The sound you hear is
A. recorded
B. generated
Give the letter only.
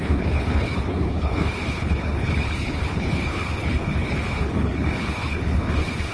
B